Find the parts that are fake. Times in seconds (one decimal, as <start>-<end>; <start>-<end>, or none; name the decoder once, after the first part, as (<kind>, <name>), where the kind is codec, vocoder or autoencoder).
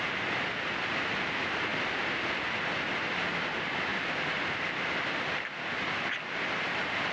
none